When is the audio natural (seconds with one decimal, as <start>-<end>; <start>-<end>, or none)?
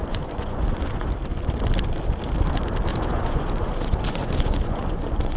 1.1-2.9